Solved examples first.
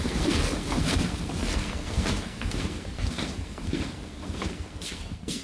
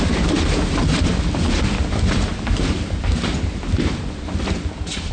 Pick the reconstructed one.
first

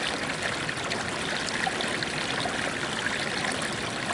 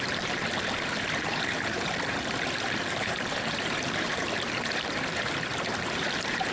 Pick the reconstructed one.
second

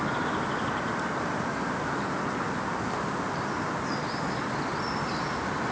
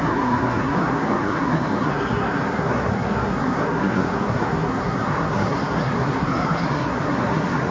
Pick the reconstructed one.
second